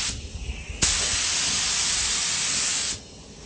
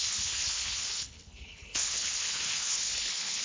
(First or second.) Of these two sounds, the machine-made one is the second